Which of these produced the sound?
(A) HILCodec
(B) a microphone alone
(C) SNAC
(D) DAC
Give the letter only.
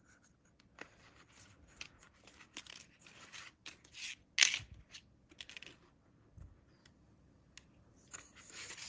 B